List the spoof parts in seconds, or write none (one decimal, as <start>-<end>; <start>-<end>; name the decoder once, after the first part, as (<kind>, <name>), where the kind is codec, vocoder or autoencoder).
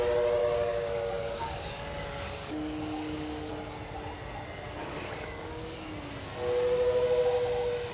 0.4-3.5 (codec, DAC); 4.8-5.7